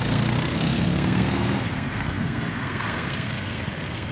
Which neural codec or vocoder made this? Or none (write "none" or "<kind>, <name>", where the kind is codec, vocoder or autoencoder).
codec, SNAC